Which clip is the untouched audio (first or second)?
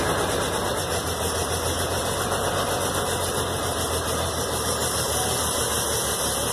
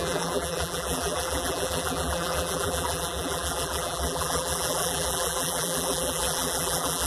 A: first